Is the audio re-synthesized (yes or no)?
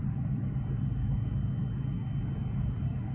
no